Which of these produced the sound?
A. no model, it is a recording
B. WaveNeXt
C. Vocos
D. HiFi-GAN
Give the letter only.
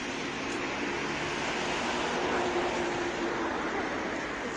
A